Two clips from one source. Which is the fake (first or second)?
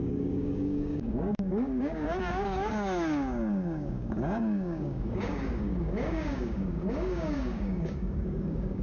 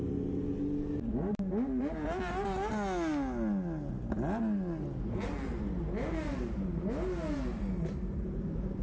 first